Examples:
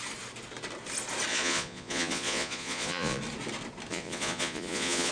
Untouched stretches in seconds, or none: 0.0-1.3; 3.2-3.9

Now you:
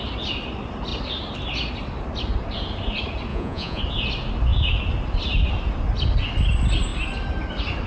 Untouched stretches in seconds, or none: 0.0-3.3; 3.8-7.9

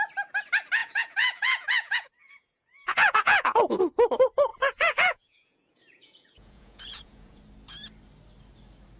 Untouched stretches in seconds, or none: 0.0-0.8; 3.8-4.5; 7.4-9.0